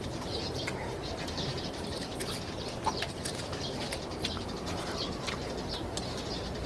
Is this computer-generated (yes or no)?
yes